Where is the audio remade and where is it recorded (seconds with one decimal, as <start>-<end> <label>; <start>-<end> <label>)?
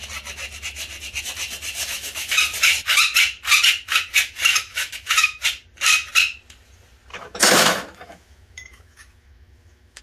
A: 0.0-1.8 recorded; 1.8-2.3 remade; 2.3-4.5 recorded; 4.5-5.4 remade; 5.4-7.1 recorded; 7.1-10.0 remade